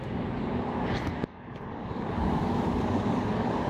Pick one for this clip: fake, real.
fake